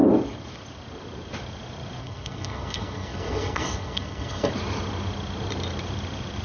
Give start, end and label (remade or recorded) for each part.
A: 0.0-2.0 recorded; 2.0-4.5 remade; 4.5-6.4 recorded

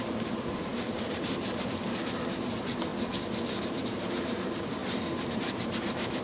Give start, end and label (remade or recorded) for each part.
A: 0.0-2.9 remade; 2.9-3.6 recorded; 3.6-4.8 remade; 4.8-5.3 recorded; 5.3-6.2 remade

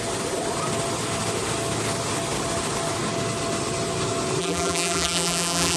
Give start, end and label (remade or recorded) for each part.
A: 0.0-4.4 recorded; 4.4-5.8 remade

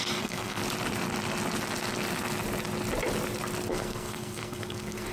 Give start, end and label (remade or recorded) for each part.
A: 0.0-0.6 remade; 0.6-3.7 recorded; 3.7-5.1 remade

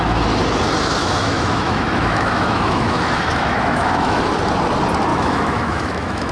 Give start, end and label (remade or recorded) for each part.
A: 0.0-1.0 recorded; 1.0-4.2 remade; 4.2-5.1 recorded; 5.1-6.3 remade